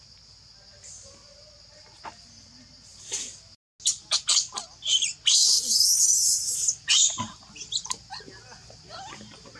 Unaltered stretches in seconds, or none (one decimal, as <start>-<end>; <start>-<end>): 0.0-9.6